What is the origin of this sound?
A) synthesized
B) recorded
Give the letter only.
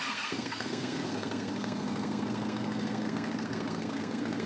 A